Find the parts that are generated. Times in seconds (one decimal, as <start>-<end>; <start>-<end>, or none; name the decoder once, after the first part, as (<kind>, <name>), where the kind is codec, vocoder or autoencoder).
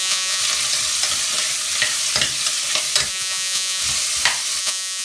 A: 0.0-0.4 (vocoder, Vocos); 3.1-3.8; 4.6-5.0